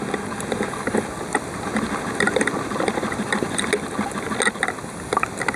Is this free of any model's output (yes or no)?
yes